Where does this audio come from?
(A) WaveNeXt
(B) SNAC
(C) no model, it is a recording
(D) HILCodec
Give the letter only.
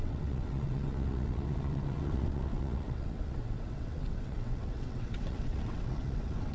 A